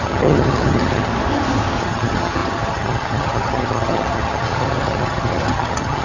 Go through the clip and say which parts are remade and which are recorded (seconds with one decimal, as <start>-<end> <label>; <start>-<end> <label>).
0.0-1.1 remade; 1.1-1.8 recorded; 1.8-6.0 remade